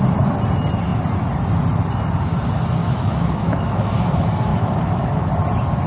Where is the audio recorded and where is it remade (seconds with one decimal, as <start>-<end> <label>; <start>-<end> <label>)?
0.0-2.8 recorded; 2.8-3.9 remade; 3.9-4.5 recorded; 4.5-5.3 remade; 5.3-5.9 recorded